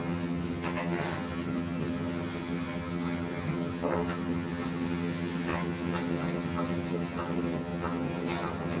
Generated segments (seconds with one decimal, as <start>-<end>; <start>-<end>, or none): 0.0-8.8